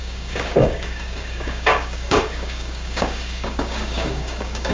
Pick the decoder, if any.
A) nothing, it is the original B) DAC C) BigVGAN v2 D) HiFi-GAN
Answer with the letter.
B